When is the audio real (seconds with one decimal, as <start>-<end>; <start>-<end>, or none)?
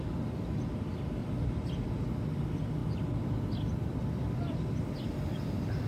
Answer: 0.0-1.2; 1.9-5.9